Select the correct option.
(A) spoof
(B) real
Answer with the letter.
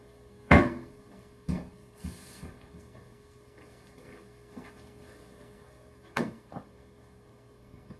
A